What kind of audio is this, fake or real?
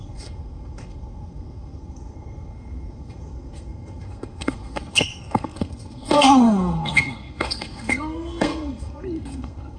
fake